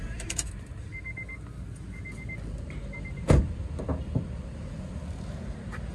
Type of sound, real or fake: real